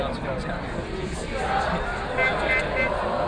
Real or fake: real